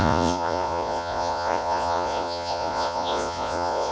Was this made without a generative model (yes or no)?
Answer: no